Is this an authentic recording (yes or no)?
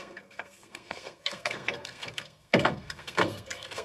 no